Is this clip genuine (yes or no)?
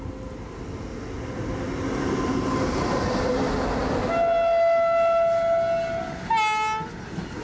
yes